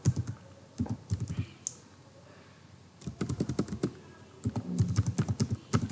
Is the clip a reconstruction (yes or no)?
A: no